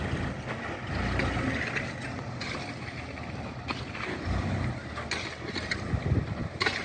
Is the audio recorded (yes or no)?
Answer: yes